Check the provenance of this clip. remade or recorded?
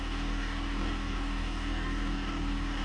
remade